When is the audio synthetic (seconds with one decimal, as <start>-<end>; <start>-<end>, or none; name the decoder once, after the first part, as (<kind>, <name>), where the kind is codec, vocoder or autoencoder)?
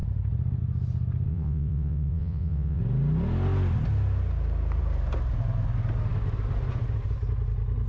1.3-2.8 (vocoder, WaveNeXt)